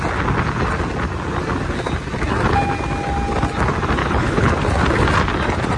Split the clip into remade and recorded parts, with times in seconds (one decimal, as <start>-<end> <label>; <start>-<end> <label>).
0.0-4.0 recorded; 4.0-4.5 remade; 4.5-5.8 recorded